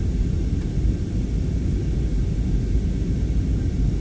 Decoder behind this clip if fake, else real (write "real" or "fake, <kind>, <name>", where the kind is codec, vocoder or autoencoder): real